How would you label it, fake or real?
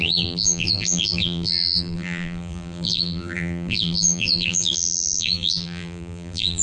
fake